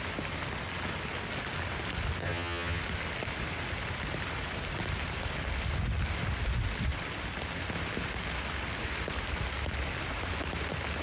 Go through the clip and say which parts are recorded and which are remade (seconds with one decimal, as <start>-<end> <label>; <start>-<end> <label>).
0.0-2.2 recorded; 2.2-2.8 remade; 2.8-11.0 recorded